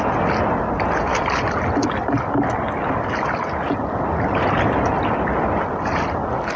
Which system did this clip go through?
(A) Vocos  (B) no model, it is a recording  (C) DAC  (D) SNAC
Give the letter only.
B